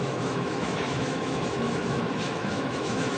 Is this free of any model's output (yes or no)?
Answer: no